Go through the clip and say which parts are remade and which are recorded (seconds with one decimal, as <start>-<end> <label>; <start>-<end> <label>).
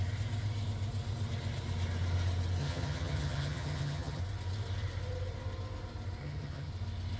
0.0-2.6 recorded; 2.6-4.2 remade; 4.2-6.2 recorded; 6.2-6.7 remade; 6.7-7.2 recorded